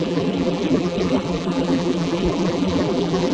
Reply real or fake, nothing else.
fake